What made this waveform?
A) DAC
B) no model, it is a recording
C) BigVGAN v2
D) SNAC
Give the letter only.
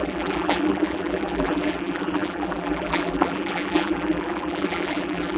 C